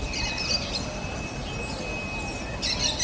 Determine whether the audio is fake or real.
real